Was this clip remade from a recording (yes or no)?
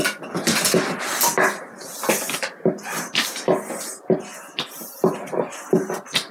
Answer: no